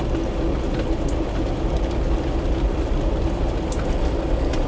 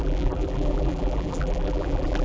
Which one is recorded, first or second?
first